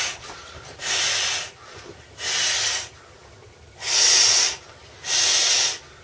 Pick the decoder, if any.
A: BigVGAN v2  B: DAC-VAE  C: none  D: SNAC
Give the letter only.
C